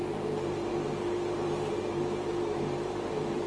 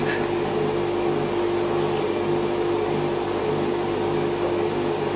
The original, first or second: second